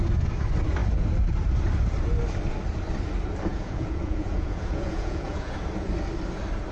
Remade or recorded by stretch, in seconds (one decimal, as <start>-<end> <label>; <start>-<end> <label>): 0.0-3.5 recorded; 3.5-5.6 remade; 5.6-6.7 recorded